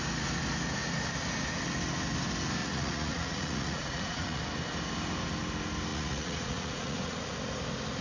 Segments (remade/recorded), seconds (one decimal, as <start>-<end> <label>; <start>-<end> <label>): 0.0-2.6 recorded; 2.6-4.4 remade; 4.4-5.9 recorded; 5.9-7.3 remade; 7.3-8.0 recorded